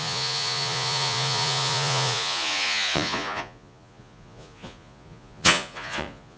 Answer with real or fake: fake